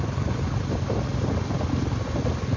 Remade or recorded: recorded